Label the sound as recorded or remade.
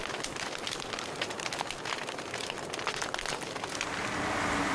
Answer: recorded